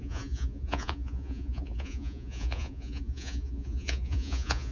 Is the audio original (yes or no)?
no